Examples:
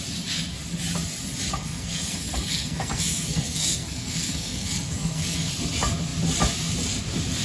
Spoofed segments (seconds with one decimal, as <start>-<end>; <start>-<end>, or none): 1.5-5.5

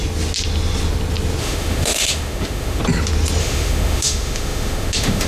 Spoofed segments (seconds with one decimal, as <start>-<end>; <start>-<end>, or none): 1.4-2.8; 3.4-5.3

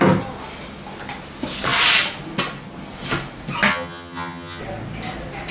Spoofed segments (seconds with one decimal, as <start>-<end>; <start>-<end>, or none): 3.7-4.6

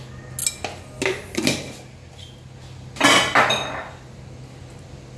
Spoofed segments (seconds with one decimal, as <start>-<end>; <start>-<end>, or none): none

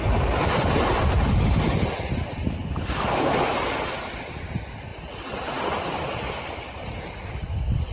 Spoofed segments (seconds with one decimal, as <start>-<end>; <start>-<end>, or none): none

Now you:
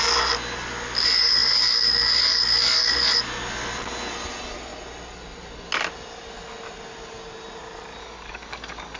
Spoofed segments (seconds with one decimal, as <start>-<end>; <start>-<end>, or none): 8.0-9.0